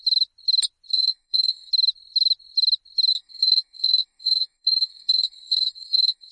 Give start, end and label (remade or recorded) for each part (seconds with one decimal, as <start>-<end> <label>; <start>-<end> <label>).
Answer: 0.0-0.9 recorded; 0.9-1.7 remade; 1.7-3.1 recorded; 3.1-6.3 remade